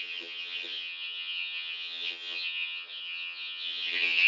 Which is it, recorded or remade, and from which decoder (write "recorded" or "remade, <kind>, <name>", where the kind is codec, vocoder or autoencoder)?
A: remade, vocoder, HiFi-GAN